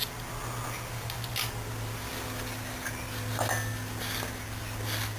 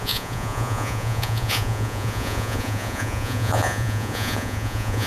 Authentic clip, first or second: first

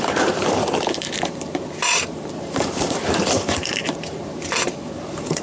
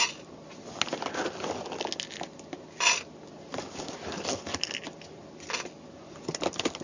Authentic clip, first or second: second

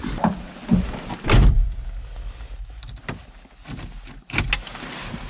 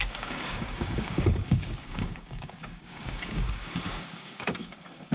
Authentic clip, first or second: first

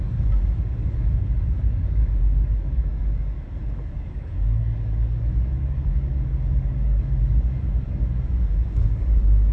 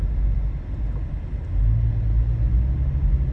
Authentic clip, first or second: second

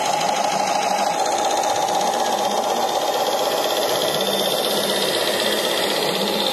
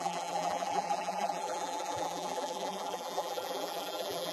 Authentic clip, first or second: first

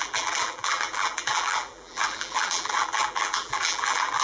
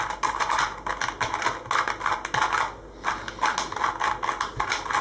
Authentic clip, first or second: second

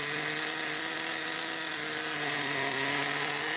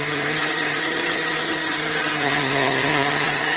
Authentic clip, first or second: first